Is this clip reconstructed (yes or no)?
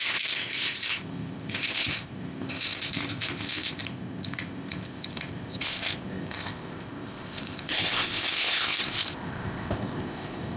yes